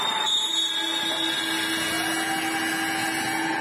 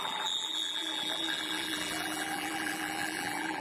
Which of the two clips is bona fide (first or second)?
first